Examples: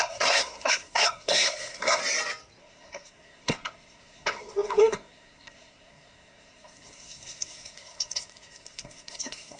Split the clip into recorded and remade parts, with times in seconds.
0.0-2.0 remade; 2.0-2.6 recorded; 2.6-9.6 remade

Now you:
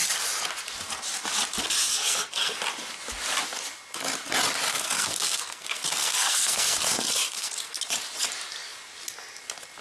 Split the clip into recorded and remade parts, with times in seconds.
0.0-1.9 recorded; 1.9-2.6 remade; 2.6-4.7 recorded; 4.7-7.8 remade; 7.8-9.8 recorded

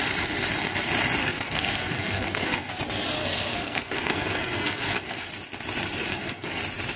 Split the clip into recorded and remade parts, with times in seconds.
0.0-1.2 recorded; 1.2-2.7 remade; 2.7-3.2 recorded; 3.2-5.3 remade; 5.3-6.1 recorded; 6.1-6.6 remade; 6.6-7.0 recorded

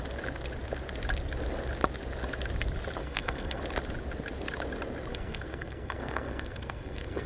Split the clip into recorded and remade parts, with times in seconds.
0.0-3.0 recorded; 3.0-3.6 remade; 3.6-5.1 recorded; 5.1-7.3 remade

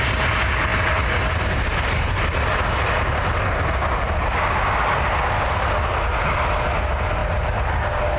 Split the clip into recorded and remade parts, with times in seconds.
0.0-8.2 recorded

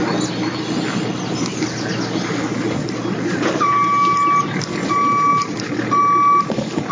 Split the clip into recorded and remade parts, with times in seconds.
0.0-6.9 recorded

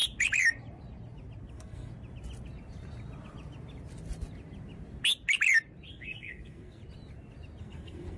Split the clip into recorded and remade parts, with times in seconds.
0.0-1.5 recorded; 1.5-1.9 remade; 1.9-5.9 recorded; 5.9-6.8 remade; 6.8-7.6 recorded; 7.6-8.2 remade

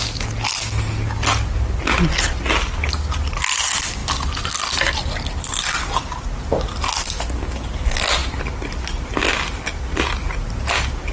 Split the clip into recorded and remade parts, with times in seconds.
0.0-11.1 recorded